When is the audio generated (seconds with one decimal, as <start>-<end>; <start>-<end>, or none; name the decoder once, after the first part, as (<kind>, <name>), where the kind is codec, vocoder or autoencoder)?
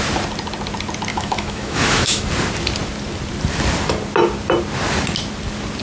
1.1-2.2 (autoencoder, DAC-VAE)